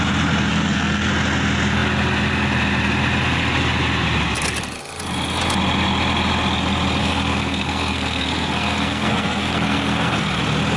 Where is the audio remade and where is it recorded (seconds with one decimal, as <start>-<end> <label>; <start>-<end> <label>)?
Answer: 0.0-0.5 recorded; 0.5-1.1 remade; 1.1-7.0 recorded; 7.0-10.4 remade; 10.4-10.8 recorded